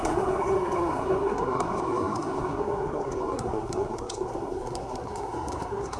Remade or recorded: remade